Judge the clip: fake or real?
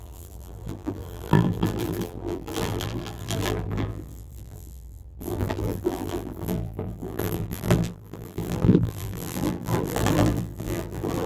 fake